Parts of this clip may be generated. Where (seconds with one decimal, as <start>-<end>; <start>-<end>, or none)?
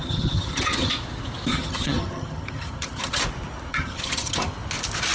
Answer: 0.0-0.9; 1.5-3.2; 3.7-4.5